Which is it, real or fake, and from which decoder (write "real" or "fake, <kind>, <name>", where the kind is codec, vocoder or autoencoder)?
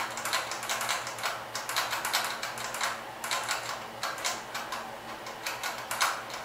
real